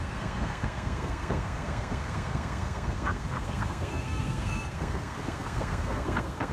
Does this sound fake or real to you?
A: fake